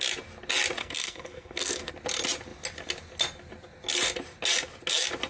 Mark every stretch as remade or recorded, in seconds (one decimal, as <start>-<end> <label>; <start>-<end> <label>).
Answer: 0.0-0.8 recorded; 0.8-1.9 remade; 1.9-5.3 recorded